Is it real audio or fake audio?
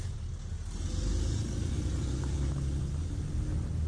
real